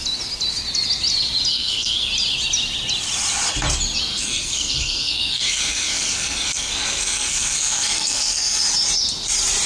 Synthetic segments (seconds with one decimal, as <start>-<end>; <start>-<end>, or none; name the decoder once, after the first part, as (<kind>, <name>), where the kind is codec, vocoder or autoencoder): 1.5-2.1 (codec, SNAC); 4.1-8.6